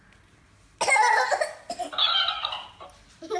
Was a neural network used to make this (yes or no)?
no